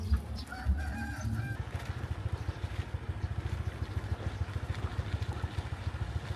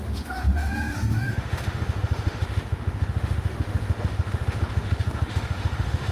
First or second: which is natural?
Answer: first